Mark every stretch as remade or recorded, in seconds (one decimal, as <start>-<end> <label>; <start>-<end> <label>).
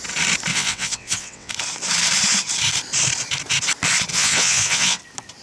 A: 0.0-0.5 recorded; 0.5-1.5 remade; 1.5-4.1 recorded; 4.1-5.0 remade; 5.0-5.4 recorded